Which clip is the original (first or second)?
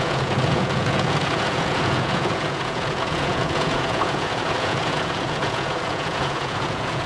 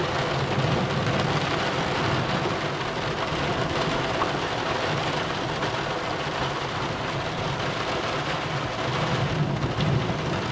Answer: second